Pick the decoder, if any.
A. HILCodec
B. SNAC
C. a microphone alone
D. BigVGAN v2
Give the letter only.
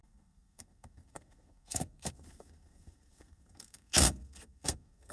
B